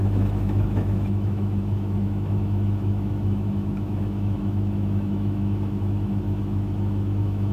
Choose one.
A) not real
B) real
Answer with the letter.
A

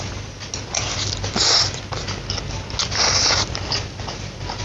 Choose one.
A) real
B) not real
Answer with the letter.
A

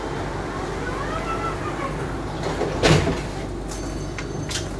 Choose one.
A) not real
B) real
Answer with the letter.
B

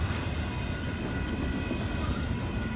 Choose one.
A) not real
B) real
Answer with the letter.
B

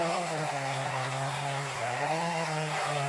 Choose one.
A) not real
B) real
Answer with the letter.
A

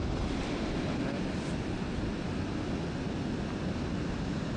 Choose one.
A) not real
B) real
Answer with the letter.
B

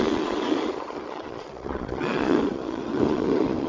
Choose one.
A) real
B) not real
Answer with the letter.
B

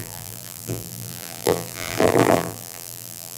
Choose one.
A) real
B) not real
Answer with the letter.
B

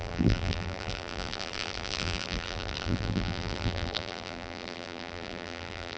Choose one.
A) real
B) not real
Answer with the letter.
B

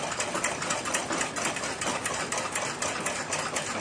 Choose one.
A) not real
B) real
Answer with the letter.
B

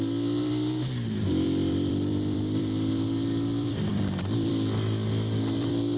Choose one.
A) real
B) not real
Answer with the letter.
B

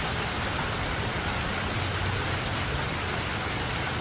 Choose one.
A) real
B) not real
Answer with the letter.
A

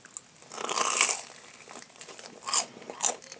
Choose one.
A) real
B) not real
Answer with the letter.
A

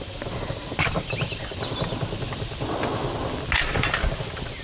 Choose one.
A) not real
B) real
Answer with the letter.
B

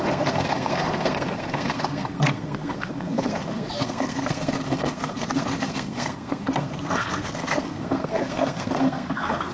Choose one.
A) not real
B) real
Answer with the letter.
A